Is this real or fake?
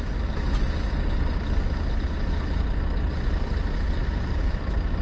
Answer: real